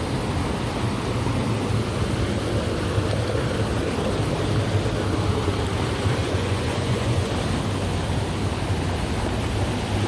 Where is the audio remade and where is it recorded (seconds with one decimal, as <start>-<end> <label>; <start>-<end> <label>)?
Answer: 0.0-6.2 recorded; 6.2-7.3 remade; 7.3-10.1 recorded